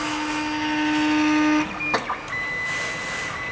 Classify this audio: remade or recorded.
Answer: recorded